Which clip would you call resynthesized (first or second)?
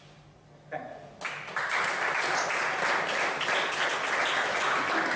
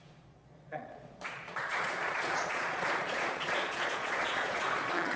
second